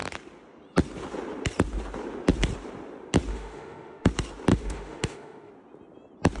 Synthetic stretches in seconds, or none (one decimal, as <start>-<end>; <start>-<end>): 3.3-4.1; 4.5-5.5